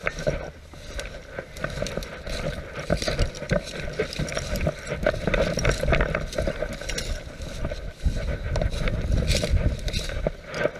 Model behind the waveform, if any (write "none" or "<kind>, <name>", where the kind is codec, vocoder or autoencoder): none